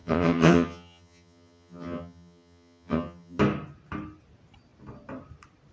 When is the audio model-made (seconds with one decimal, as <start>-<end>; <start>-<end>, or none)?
0.0-3.4